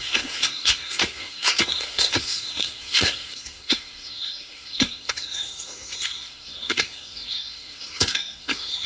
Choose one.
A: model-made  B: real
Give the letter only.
A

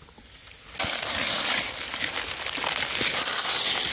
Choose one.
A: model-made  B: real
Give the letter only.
B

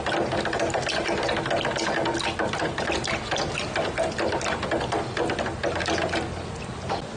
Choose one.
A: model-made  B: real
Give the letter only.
B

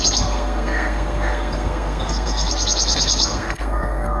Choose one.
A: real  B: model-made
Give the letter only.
B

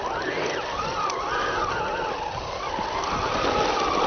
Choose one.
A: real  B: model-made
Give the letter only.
A